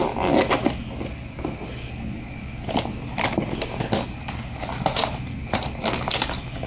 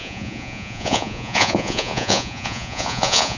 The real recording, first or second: first